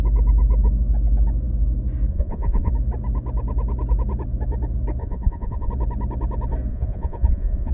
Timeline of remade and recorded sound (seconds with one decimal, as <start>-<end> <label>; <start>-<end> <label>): 0.0-2.1 recorded; 2.1-2.7 remade; 2.7-5.0 recorded; 5.0-5.7 remade; 5.7-6.7 recorded; 6.7-7.7 remade